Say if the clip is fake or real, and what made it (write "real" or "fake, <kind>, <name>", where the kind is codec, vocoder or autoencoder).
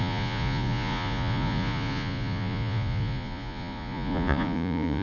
fake, vocoder, Vocos